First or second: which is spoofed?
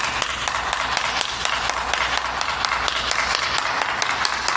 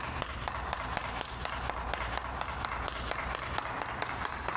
second